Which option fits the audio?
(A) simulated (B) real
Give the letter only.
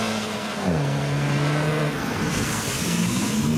A